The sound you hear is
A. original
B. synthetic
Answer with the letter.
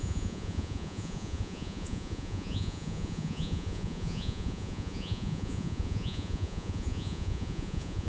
B